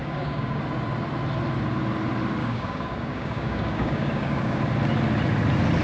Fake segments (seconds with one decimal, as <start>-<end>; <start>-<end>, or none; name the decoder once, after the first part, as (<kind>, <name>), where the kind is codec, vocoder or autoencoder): 0.0-0.6 (codec, DAC); 2.4-4.6